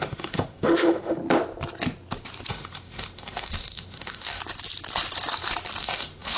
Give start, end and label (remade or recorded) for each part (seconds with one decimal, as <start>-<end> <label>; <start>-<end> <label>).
0.0-1.2 remade; 1.2-2.5 recorded; 2.5-4.4 remade; 4.4-5.8 recorded; 5.8-6.4 remade